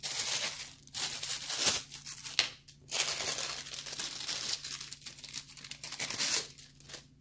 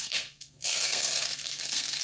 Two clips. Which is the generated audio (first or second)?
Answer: second